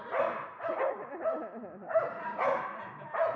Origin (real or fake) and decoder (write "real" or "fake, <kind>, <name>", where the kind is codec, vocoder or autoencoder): real